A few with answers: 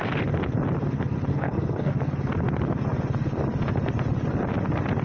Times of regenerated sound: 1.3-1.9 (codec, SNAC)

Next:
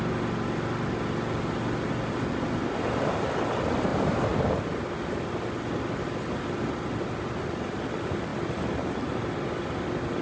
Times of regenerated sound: 3.9-4.8 (vocoder, BigVGAN v2); 8.3-9.3

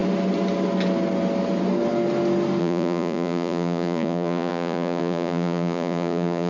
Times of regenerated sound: 2.6-6.5 (vocoder, Vocos)

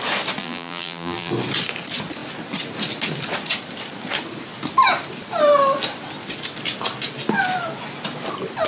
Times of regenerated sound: 0.4-1.3 (vocoder, BigVGAN v2)

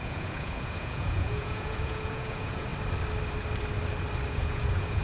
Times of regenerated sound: 0.0-2.7 (vocoder, Vocos); 4.3-5.0

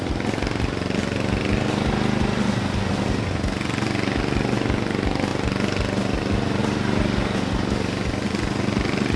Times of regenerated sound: none

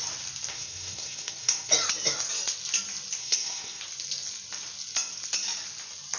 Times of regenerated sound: 0.5-1.7 (codec, SNAC); 3.2-3.8

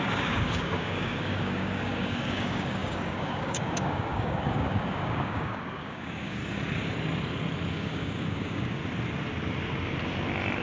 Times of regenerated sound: 0.0-6.4 (codec, DAC); 7.7-8.8